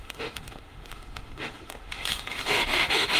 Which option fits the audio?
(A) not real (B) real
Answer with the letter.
A